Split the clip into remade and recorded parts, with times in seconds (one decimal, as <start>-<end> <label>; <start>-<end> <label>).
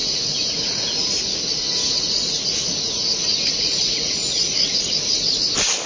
0.0-1.3 remade; 1.3-1.8 recorded; 1.8-5.3 remade; 5.3-5.9 recorded